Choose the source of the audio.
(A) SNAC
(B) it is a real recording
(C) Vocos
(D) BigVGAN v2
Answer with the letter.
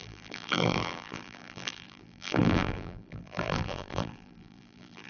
D